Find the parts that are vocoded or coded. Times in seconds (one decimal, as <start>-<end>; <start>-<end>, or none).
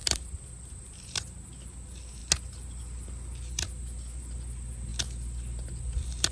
none